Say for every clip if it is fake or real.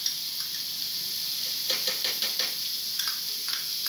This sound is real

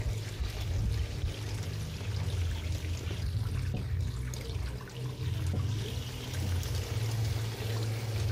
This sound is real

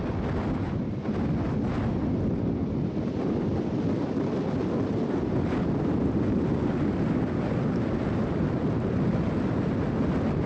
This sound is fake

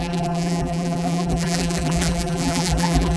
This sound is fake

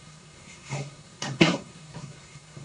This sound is fake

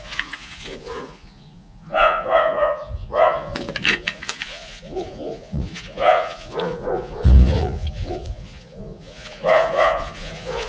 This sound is fake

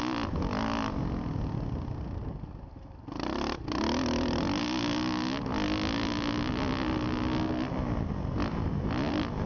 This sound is real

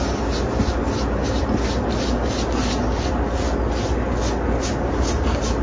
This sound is real